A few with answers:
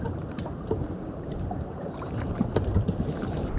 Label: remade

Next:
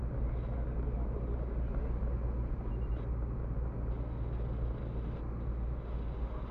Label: recorded